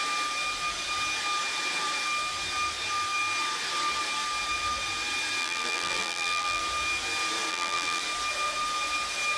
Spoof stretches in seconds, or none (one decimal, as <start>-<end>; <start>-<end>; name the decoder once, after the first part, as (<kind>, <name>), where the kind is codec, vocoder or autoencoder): 5.4-6.6 (vocoder, BigVGAN v2); 7.5-8.0